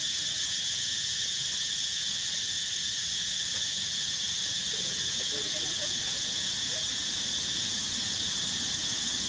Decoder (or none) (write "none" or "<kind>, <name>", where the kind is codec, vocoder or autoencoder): vocoder, Vocos